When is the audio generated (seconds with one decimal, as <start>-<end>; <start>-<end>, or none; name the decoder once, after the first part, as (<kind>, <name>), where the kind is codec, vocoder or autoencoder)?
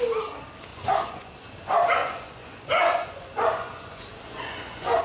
0.7-1.3 (vocoder, Vocos); 2.0-5.0